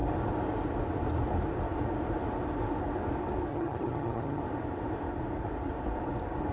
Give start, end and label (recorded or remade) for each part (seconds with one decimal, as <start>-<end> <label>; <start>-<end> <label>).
0.0-3.5 recorded; 3.5-4.4 remade; 4.4-6.5 recorded

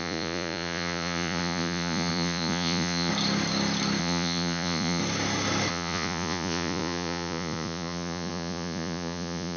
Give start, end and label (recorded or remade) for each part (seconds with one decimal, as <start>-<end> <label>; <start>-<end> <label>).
0.0-3.1 remade; 3.1-4.0 recorded; 4.0-5.0 remade; 5.0-5.7 recorded; 5.7-9.6 remade

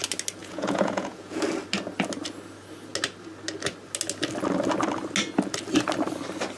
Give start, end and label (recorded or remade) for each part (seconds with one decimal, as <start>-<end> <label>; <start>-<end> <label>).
0.0-0.4 recorded; 0.4-1.4 remade; 1.4-6.6 recorded

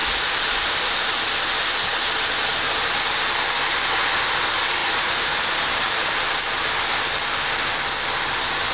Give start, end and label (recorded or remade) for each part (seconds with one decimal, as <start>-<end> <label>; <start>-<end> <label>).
0.0-0.9 remade; 0.9-4.8 recorded; 4.8-6.4 remade; 6.4-8.7 recorded

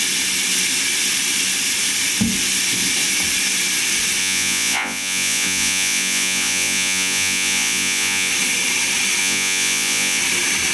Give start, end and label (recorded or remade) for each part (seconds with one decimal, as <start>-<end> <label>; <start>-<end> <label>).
0.0-4.2 recorded; 4.2-8.3 remade; 8.3-9.2 recorded; 9.2-10.2 remade; 10.2-10.7 recorded

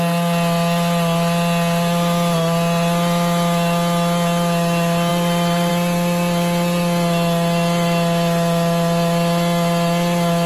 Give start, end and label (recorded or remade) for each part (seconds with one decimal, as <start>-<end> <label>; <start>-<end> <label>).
0.0-5.1 recorded; 5.1-5.7 remade; 5.7-10.5 recorded